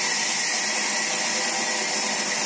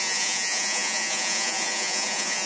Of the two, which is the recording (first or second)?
first